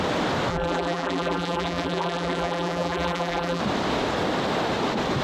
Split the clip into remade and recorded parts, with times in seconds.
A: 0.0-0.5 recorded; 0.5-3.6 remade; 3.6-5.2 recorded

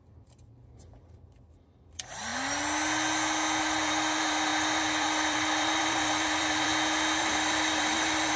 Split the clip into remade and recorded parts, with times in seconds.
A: 0.0-2.3 remade; 2.3-3.6 recorded; 3.6-6.7 remade; 6.7-7.2 recorded; 7.2-8.4 remade

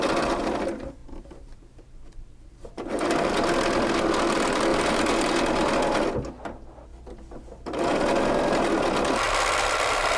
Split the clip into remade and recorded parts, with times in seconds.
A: 0.0-1.0 recorded; 1.0-3.3 remade; 3.3-4.7 recorded; 4.7-5.8 remade; 5.8-10.2 recorded

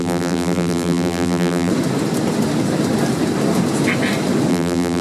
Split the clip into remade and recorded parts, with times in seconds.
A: 0.0-1.7 remade; 1.7-4.5 recorded; 4.5-5.0 remade

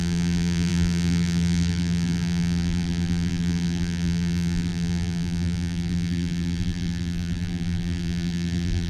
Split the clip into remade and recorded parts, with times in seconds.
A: 0.0-8.9 remade

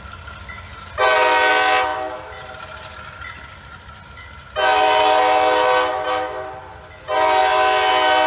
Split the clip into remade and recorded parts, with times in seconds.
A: 0.0-8.3 recorded

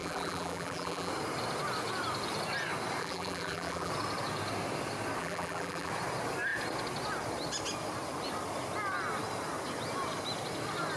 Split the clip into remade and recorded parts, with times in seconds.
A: 0.0-1.1 remade; 1.1-3.0 recorded; 3.0-3.9 remade; 3.9-5.2 recorded; 5.2-5.9 remade; 5.9-11.0 recorded

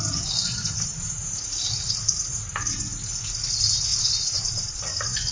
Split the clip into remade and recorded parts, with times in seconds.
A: 0.0-0.9 recorded; 0.9-1.4 remade; 1.4-3.9 recorded; 3.9-4.8 remade; 4.8-5.3 recorded